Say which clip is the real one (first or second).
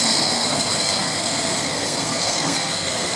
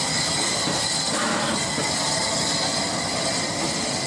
second